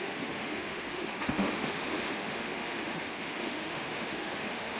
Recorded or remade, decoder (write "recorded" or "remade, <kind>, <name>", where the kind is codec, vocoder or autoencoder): remade, autoencoder, DAC-VAE